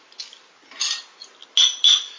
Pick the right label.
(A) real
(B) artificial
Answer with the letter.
A